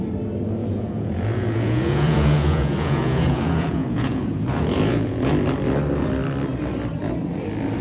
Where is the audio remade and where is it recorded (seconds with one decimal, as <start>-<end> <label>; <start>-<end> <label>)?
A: 0.0-0.6 recorded; 0.6-5.3 remade; 5.3-7.8 recorded